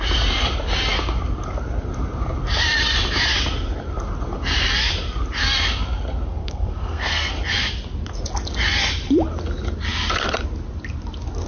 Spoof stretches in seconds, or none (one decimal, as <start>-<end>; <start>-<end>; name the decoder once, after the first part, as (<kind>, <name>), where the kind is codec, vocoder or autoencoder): 6.4-7.3 (codec, SNAC)